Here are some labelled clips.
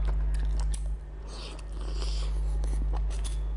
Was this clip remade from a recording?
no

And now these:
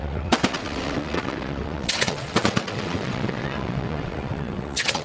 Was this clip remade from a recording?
yes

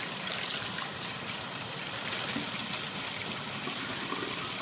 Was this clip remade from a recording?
no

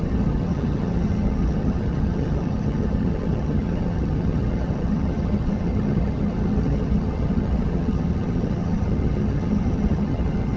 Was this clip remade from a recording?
yes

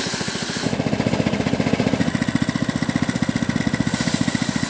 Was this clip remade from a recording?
no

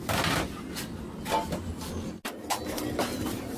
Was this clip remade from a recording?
no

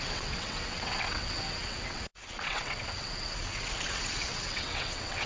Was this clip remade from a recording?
yes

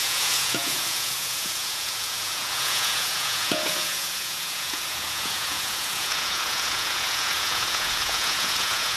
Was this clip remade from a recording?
yes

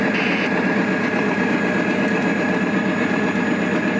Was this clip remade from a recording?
no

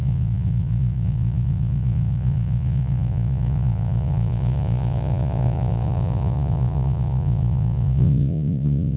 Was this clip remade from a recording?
yes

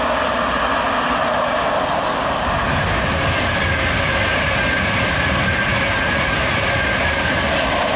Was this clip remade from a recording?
no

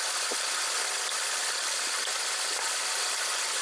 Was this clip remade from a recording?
no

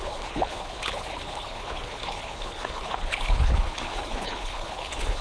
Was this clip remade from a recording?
yes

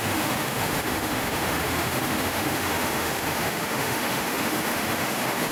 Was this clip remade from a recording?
yes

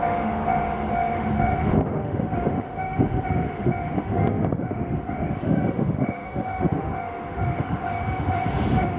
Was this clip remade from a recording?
yes